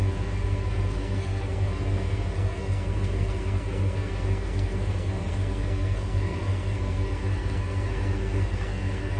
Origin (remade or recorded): remade